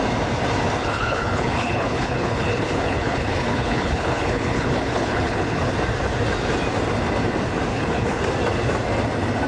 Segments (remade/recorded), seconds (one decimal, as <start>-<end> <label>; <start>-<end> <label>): 0.0-0.8 recorded; 0.8-5.7 remade; 5.7-7.7 recorded; 7.7-8.2 remade; 8.2-9.5 recorded